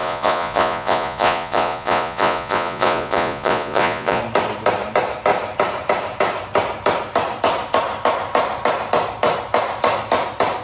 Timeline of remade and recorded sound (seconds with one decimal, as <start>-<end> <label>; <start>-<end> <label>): 0.0-4.2 remade; 4.2-10.6 recorded